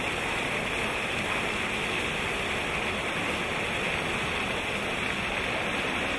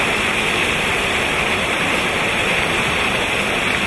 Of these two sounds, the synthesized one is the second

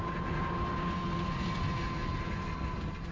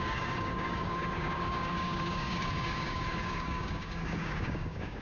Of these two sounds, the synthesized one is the second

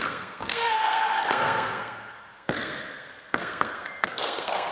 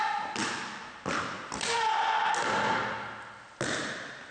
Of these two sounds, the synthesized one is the first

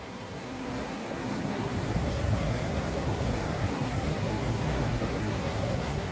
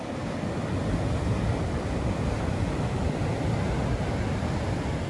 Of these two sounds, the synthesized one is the first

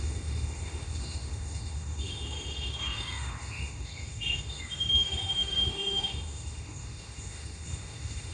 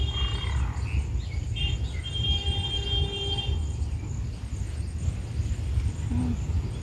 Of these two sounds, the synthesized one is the first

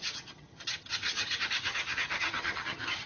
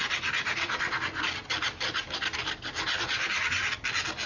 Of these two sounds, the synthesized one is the first